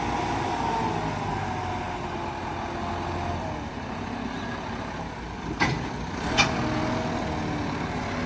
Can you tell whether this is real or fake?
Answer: real